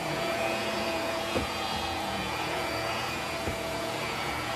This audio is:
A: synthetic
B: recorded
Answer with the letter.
A